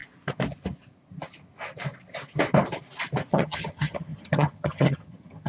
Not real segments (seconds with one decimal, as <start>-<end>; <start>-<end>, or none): 3.3-5.5